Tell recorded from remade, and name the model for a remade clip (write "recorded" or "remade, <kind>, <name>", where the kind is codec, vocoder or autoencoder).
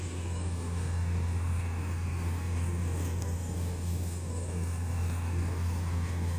remade, codec, DAC